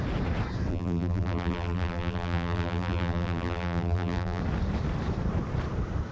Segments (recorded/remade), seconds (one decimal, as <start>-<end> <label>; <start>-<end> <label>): 0.0-0.7 recorded; 0.7-4.4 remade; 4.4-6.1 recorded